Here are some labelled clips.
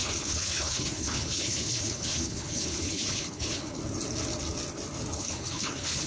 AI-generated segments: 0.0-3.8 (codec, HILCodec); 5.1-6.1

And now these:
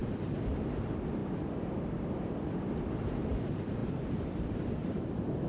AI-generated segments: 3.8-5.1 (vocoder, BigVGAN v2)

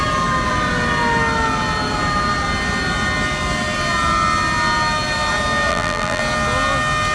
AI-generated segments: 5.7-6.2 (vocoder, BigVGAN v2)

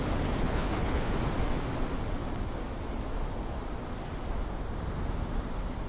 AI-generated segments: 0.4-1.1 (codec, HILCodec)

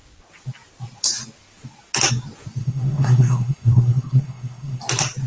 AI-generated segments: 2.6-4.8 (codec, SNAC)

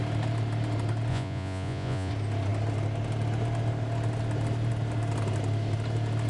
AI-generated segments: 1.1-2.1 (vocoder, Vocos)

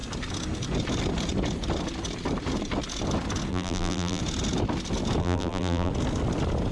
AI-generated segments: 3.5-4.2 (vocoder, BigVGAN v2); 5.2-5.9